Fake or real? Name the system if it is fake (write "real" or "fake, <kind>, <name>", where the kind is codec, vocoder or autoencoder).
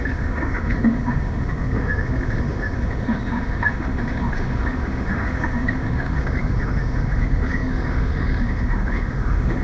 fake, autoencoder, DAC-VAE